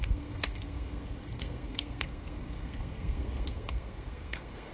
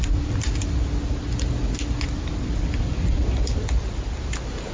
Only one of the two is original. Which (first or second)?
second